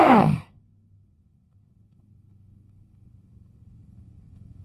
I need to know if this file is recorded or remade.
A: remade